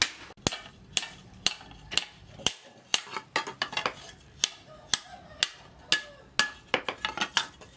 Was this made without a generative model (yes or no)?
yes